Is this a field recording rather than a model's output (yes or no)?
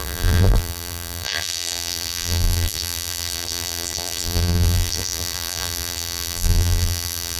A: no